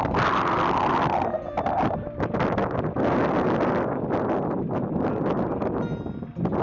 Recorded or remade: recorded